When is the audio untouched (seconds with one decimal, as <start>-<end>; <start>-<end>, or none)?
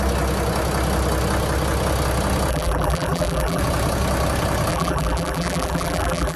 0.0-2.5; 3.6-4.7